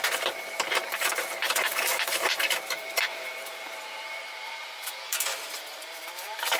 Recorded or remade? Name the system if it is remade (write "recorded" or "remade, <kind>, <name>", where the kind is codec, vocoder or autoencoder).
remade, vocoder, BigVGAN v2